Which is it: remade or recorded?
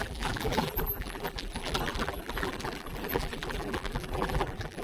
remade